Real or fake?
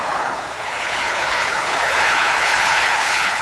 fake